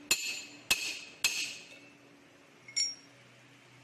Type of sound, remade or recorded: recorded